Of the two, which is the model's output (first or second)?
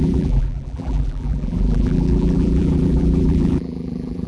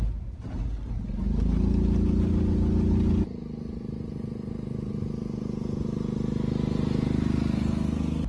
first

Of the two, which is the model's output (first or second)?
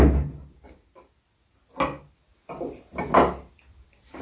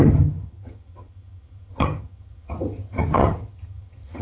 second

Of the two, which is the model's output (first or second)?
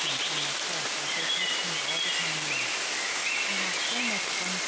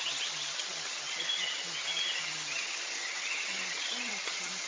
second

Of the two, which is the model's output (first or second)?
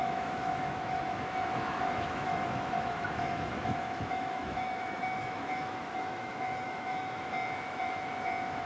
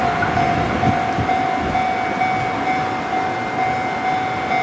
first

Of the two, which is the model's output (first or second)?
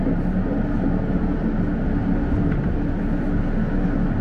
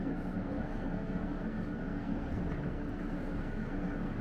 second